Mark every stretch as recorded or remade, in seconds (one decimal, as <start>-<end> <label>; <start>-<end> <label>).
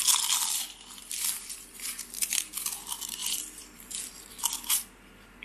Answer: 0.0-1.0 recorded; 1.0-2.4 remade; 2.4-3.2 recorded; 3.2-4.4 remade; 4.4-5.4 recorded